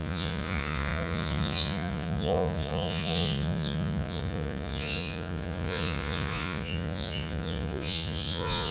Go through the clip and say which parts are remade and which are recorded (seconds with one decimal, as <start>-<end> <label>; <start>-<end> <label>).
0.0-8.7 remade